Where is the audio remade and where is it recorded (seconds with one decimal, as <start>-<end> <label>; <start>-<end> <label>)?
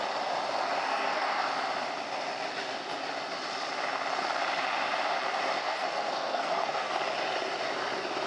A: 0.0-0.9 recorded; 0.9-1.4 remade; 1.4-5.6 recorded; 5.6-6.9 remade; 6.9-8.3 recorded